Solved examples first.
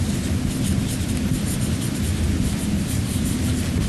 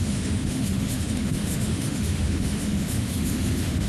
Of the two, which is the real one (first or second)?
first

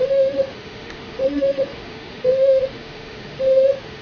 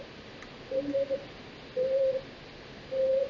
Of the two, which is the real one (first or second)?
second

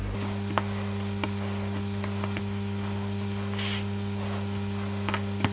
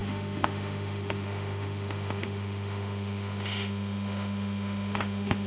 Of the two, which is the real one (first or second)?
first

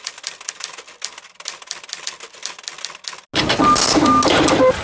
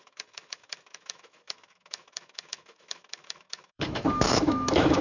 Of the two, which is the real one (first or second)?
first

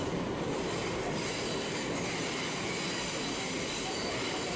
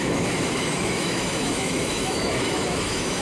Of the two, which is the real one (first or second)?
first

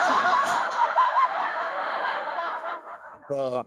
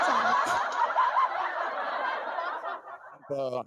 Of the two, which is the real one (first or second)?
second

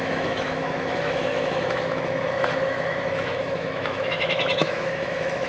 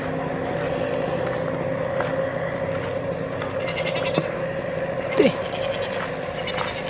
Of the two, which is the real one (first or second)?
second